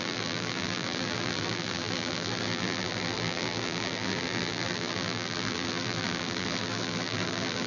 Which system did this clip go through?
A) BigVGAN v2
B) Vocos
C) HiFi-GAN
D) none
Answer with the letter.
A